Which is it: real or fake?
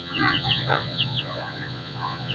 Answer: fake